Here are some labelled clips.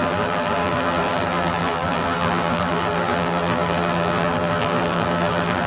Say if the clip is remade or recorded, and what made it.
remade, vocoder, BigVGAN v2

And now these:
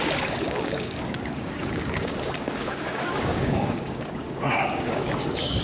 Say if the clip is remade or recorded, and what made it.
remade, codec, DAC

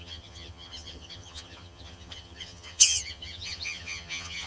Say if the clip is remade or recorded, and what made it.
remade, vocoder, HiFi-GAN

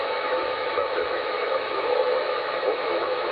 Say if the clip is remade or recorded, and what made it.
remade, autoencoder, DAC-VAE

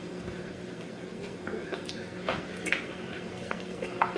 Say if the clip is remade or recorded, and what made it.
remade, codec, SNAC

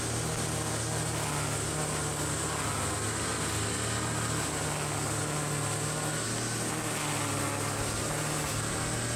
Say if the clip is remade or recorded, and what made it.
recorded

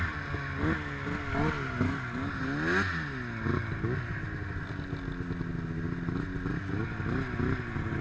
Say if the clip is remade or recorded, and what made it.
recorded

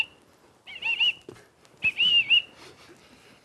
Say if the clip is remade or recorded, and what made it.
recorded